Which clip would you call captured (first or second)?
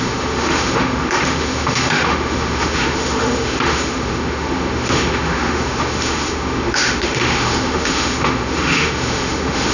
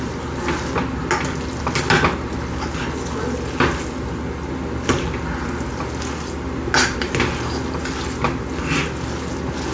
second